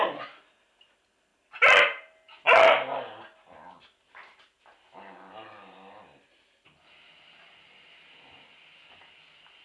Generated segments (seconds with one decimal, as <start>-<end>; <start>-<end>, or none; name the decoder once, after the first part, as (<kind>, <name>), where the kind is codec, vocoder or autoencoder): none